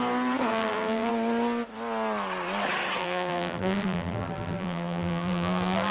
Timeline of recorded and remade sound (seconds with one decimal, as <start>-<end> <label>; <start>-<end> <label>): 0.0-0.5 recorded; 0.5-1.1 remade; 1.1-3.0 recorded; 3.0-5.9 remade